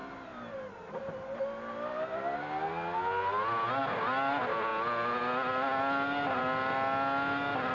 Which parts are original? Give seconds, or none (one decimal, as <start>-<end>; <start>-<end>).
0.0-7.7